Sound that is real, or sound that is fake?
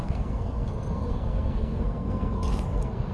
fake